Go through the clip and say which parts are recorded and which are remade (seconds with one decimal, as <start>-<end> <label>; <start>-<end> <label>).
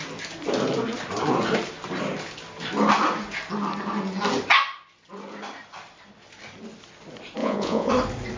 0.0-7.4 recorded; 7.4-7.9 remade; 7.9-8.4 recorded